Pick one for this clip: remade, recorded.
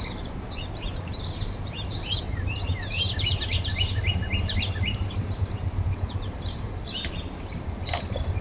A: remade